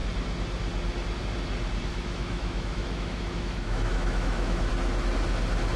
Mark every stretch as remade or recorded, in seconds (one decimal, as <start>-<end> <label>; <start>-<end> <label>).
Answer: 0.0-1.9 recorded; 1.9-4.7 remade; 4.7-5.8 recorded